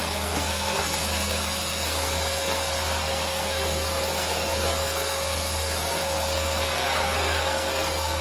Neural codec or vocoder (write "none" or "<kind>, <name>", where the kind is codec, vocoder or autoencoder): codec, SNAC